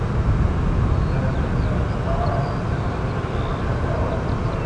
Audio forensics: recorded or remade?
recorded